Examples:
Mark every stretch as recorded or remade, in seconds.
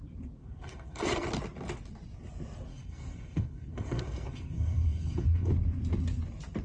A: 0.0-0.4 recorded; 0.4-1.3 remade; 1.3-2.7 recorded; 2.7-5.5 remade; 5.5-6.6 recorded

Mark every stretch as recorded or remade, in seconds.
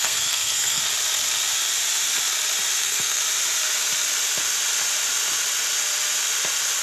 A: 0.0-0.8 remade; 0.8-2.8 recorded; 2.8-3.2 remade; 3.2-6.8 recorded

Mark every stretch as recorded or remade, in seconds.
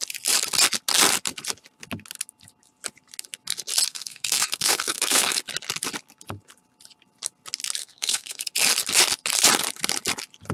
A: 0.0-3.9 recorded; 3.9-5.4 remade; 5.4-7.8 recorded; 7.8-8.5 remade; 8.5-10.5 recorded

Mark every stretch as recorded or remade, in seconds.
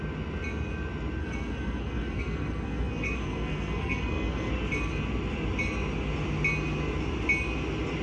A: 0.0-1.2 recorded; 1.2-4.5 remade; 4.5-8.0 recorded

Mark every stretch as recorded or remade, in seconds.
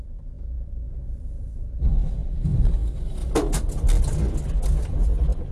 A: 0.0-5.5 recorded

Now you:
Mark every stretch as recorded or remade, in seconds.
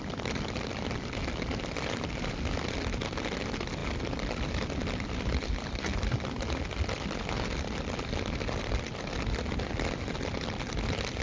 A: 0.0-11.2 recorded